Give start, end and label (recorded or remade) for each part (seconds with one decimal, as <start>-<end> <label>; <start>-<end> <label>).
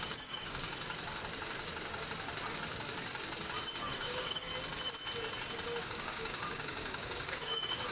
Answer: 0.0-0.7 remade; 0.7-3.8 recorded; 3.8-4.5 remade; 4.5-5.8 recorded; 5.8-7.9 remade